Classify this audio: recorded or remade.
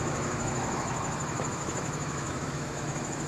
remade